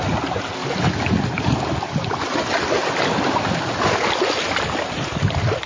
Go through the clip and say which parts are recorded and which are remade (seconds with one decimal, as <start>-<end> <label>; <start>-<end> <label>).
0.0-5.7 recorded